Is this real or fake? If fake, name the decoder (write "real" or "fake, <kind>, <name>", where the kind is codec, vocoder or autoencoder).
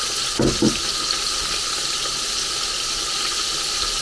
real